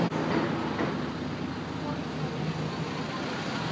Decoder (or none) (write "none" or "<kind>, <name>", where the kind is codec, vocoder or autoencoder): none